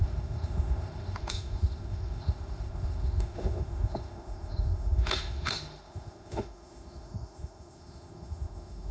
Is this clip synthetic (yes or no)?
yes